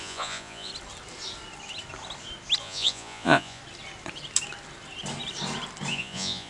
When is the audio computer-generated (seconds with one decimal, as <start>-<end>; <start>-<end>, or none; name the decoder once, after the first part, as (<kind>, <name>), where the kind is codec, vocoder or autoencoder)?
0.0-0.7 (vocoder, Vocos); 2.6-3.6; 5.9-6.5